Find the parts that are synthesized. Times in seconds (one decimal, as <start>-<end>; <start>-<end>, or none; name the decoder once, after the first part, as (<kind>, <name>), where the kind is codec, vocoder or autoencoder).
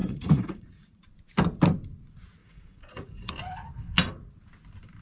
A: 0.0-1.0 (vocoder, Vocos); 2.4-3.3